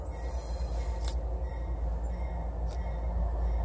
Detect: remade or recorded recorded